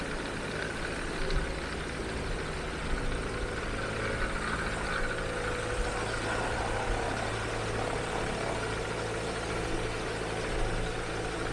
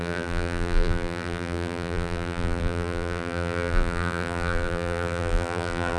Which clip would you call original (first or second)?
first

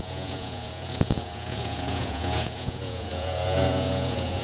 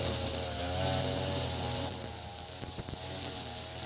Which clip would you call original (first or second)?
second